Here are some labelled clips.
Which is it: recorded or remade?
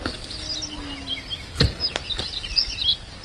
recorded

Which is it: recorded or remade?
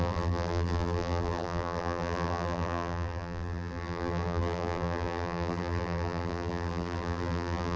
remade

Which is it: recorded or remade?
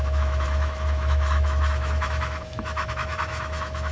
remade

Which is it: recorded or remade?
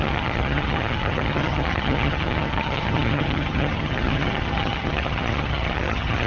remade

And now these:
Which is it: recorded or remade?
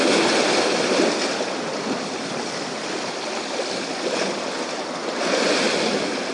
recorded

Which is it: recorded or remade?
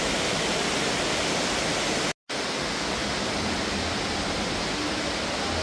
recorded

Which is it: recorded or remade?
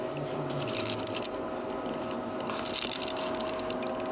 recorded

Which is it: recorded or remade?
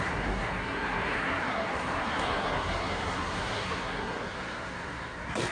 remade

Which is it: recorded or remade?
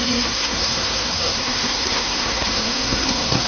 remade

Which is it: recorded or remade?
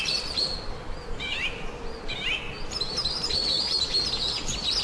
recorded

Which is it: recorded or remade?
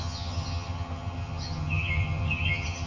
remade